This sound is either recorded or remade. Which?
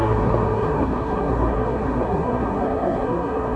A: remade